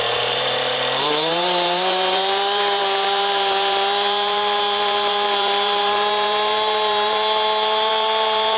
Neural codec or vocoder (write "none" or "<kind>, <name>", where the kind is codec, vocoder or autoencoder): vocoder, BigVGAN v2